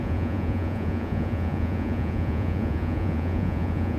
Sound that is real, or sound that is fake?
fake